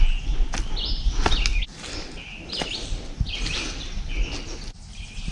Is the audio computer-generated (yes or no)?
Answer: no